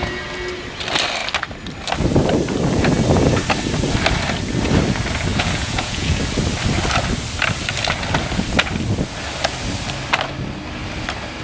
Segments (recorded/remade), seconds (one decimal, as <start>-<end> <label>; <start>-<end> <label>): 0.0-5.3 recorded; 5.3-6.2 remade; 6.2-11.4 recorded